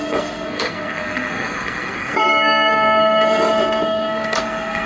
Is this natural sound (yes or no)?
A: no